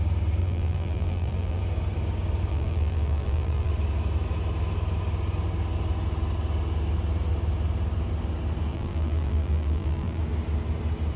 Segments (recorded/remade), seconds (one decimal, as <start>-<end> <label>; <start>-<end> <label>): 0.0-0.4 recorded; 0.4-1.6 remade; 1.6-2.5 recorded; 2.5-3.7 remade; 3.7-8.7 recorded; 8.7-10.2 remade; 10.2-11.2 recorded